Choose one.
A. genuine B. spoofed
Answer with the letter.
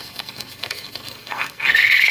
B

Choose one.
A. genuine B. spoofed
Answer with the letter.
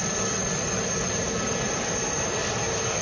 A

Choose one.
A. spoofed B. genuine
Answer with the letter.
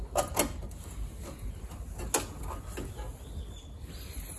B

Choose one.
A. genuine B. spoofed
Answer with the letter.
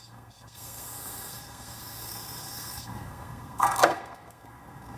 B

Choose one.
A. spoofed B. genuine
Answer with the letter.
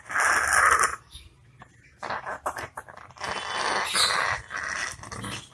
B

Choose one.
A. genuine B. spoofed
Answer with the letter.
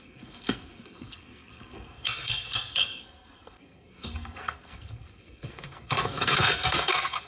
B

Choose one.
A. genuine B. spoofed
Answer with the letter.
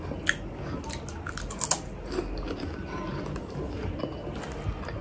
A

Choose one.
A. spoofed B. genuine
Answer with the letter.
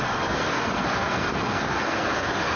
A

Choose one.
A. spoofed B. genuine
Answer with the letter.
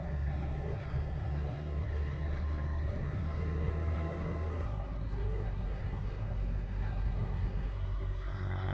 A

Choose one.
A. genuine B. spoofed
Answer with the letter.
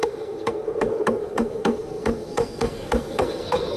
B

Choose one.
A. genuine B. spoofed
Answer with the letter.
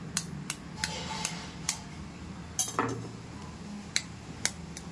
A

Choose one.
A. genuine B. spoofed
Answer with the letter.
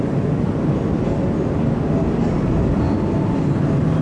A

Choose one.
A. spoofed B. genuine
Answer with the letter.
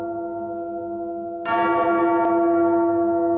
B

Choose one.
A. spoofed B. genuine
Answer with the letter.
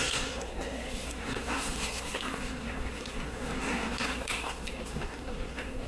A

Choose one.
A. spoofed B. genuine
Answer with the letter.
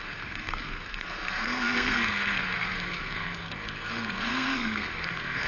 A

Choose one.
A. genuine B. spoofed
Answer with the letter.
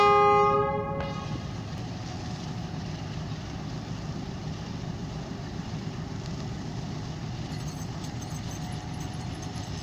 A